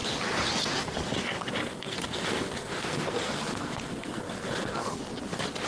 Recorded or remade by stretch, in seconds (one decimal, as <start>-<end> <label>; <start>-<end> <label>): 0.0-1.6 recorded; 1.6-5.0 remade; 5.0-5.7 recorded